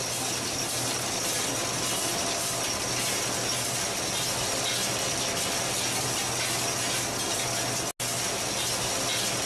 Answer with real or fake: real